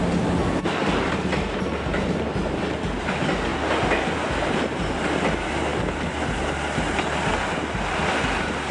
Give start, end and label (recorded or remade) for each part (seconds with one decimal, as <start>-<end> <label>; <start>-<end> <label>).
0.0-8.7 recorded